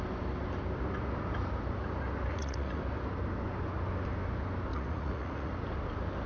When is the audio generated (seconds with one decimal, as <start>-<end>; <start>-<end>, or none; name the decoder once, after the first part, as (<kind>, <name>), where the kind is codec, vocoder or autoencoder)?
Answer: 2.3-2.8 (vocoder, Vocos); 4.7-5.5